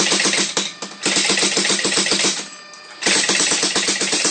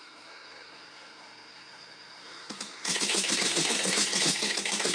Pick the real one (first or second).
first